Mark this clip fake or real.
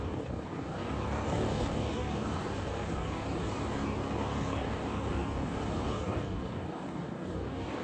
fake